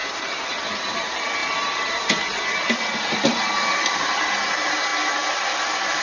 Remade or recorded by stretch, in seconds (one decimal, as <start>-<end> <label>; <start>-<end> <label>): 0.0-0.9 remade; 0.9-1.4 recorded; 1.4-4.3 remade; 4.3-6.0 recorded